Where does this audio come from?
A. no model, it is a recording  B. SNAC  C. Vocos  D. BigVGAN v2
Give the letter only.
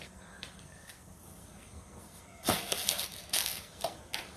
B